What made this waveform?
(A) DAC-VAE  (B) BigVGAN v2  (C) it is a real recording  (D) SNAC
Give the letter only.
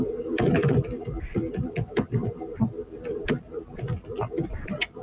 B